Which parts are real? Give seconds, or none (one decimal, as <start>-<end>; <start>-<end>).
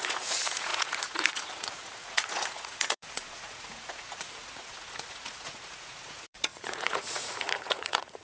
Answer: none